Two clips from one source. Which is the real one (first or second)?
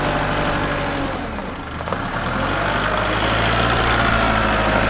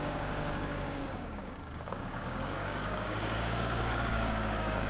first